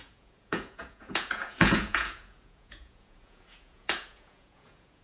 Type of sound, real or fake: fake